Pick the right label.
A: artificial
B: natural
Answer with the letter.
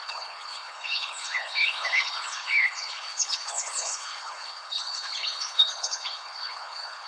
A